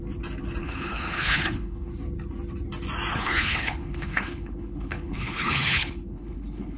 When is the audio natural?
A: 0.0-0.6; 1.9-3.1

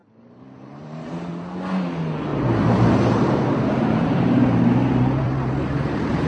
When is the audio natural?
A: 1.3-2.3

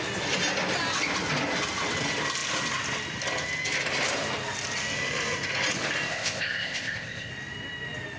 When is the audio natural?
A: 0.0-6.1; 7.3-8.2

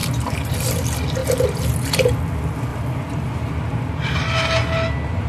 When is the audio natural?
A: 0.5-2.7; 3.9-5.3

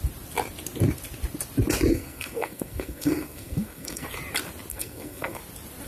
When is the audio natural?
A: 0.0-1.9; 4.1-4.7; 5.4-5.9